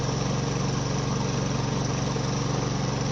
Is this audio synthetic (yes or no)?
no